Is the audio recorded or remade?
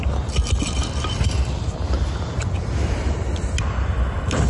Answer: recorded